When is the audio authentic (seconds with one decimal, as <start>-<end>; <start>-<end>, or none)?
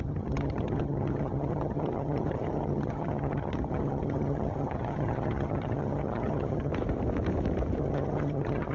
6.7-7.8